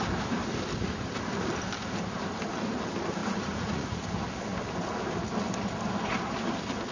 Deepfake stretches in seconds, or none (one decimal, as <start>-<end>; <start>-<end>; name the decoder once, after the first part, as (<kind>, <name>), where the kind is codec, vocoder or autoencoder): 3.2-4.0 (vocoder, Vocos)